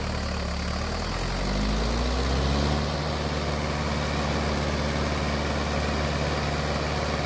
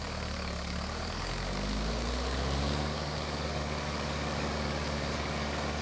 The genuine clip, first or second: first